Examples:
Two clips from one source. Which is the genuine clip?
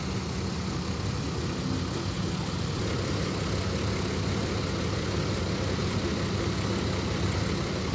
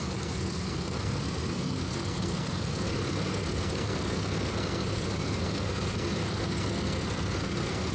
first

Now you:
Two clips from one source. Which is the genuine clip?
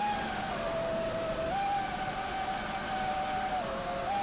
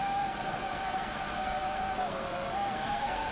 first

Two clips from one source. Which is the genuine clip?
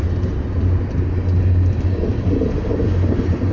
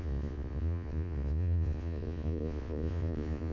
first